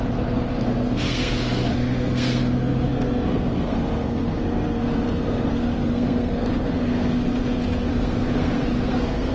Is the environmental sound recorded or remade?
remade